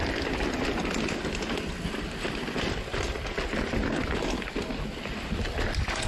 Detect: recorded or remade recorded